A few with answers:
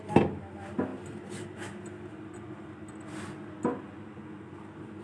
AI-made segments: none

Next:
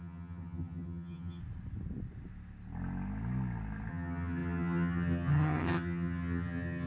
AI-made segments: 0.0-1.4 (vocoder, HiFi-GAN); 3.9-6.9

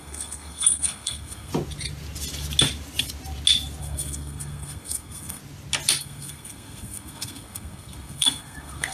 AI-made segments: 0.0-1.5 (codec, SNAC); 3.8-5.4; 6.0-8.9